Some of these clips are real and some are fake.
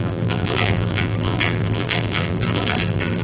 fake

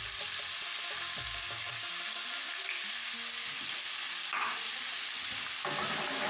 real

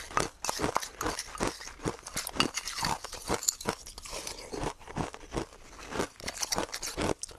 real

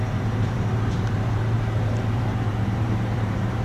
fake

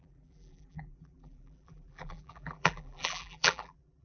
fake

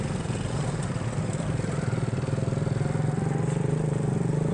fake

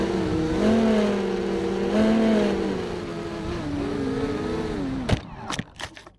real